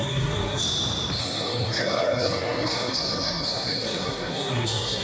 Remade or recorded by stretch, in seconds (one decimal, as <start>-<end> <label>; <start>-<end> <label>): 0.0-0.6 remade; 0.6-1.2 recorded; 1.2-5.0 remade